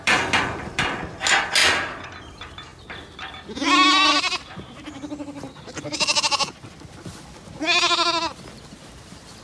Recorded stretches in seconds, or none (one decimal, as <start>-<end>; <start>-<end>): 0.0-9.4